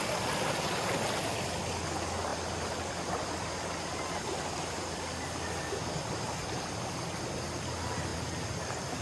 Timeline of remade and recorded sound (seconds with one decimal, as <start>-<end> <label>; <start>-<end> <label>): 0.0-9.0 recorded